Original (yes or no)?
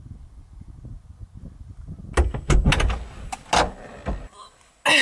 yes